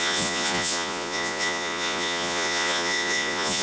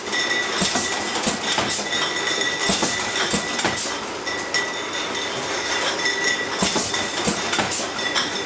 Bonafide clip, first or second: second